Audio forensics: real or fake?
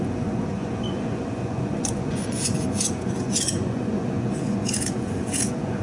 fake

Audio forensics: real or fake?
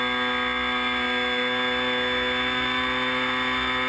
real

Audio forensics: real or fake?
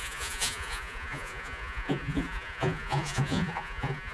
fake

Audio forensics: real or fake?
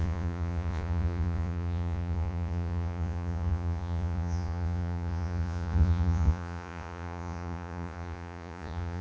fake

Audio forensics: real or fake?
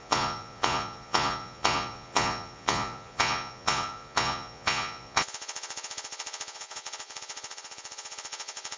fake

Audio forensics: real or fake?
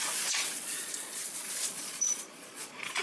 fake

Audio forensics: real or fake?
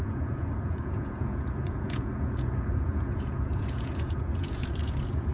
fake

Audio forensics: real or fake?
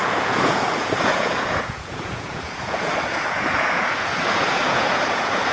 fake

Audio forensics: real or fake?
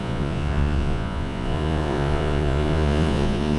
fake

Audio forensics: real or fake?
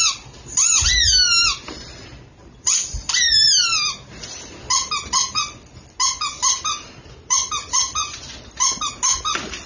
real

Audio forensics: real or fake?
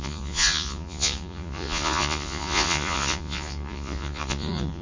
fake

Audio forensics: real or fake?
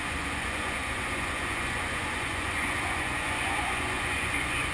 fake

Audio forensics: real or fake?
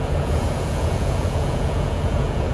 fake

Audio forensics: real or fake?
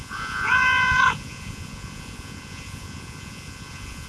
fake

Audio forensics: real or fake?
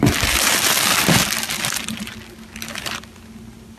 real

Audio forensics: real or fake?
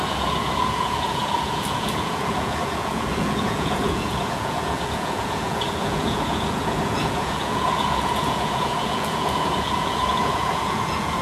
fake